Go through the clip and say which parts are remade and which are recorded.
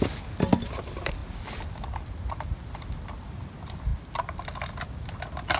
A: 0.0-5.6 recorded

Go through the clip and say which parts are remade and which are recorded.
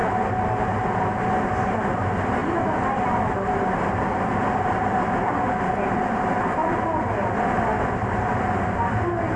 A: 0.0-9.4 recorded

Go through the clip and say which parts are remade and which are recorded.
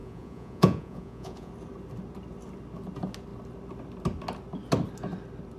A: 0.0-1.5 remade; 1.5-5.6 recorded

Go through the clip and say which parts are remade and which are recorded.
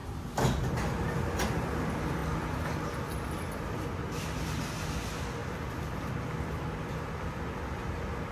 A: 0.0-8.3 recorded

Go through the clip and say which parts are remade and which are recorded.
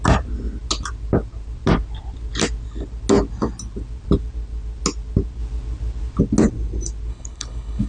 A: 0.0-7.1 recorded; 7.1-7.9 remade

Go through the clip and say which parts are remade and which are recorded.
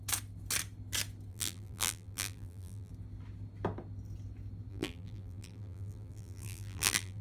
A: 0.0-1.3 recorded; 1.3-2.9 remade; 2.9-4.7 recorded; 4.7-7.2 remade